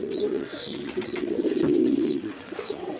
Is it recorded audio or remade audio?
remade